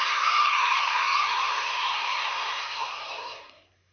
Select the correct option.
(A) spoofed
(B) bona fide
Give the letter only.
A